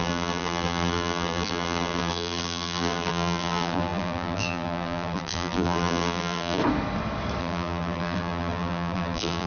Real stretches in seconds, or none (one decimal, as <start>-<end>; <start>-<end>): 6.6-7.4